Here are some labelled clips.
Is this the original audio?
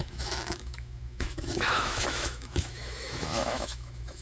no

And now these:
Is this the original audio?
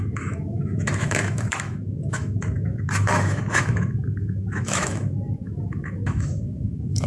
no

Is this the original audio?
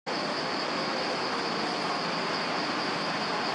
yes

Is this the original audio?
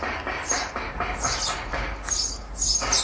yes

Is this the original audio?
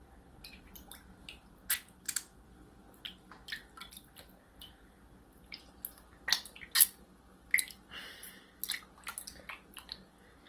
yes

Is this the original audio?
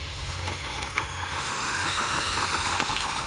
no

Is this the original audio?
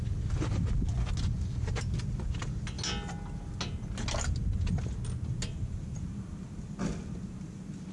yes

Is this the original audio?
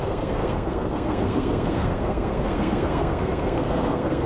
no